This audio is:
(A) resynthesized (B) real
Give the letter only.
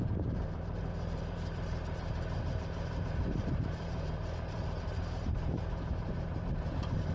A